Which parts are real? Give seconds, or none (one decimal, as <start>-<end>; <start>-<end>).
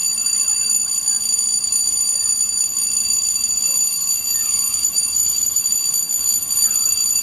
0.0-4.8; 5.6-7.2